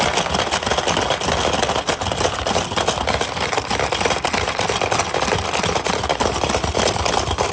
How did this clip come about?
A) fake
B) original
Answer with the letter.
B